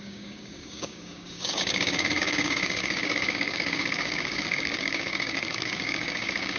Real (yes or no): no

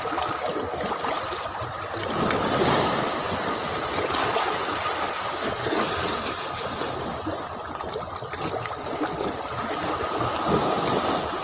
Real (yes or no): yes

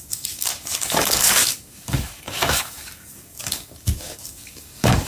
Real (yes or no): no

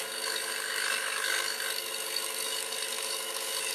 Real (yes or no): no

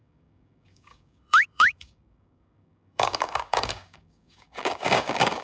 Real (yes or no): no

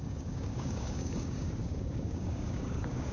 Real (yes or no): no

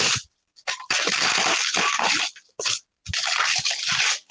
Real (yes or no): yes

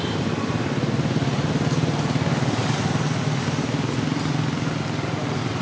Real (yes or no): yes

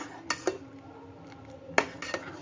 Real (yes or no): yes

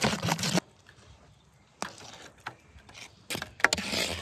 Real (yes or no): yes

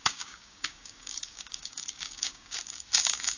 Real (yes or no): no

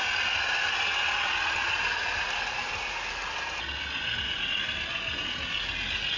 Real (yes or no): yes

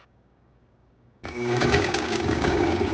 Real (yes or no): no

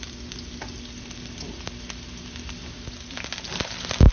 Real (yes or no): yes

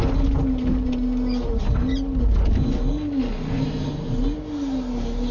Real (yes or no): yes